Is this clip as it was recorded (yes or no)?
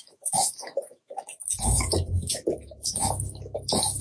no